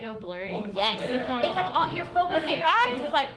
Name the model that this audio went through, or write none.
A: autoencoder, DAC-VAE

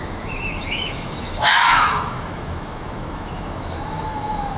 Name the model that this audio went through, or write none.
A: autoencoder, DAC-VAE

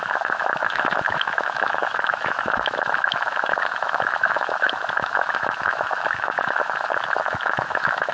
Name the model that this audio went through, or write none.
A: autoencoder, DAC-VAE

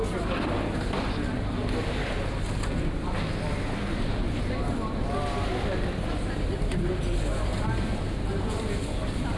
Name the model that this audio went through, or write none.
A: none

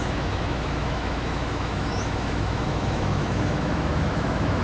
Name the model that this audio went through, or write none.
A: autoencoder, DAC-VAE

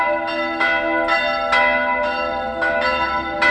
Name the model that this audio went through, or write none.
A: none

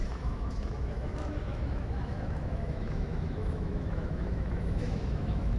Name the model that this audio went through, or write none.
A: autoencoder, DAC-VAE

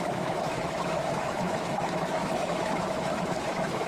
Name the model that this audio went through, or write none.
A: autoencoder, DAC-VAE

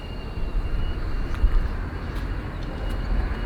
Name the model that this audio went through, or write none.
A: none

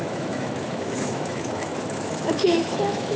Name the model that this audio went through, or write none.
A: autoencoder, DAC-VAE